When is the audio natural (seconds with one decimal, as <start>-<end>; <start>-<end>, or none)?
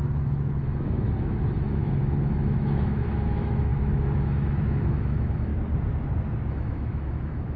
5.5-6.5